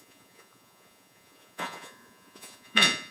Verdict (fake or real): fake